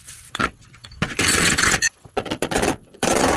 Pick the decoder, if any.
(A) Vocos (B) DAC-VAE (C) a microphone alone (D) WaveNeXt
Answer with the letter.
D